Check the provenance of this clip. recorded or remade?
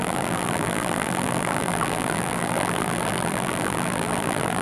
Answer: remade